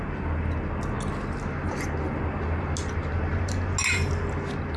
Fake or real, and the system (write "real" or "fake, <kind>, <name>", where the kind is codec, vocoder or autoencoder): real